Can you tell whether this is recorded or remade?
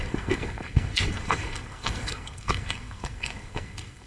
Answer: remade